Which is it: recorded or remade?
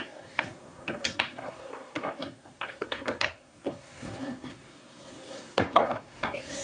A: remade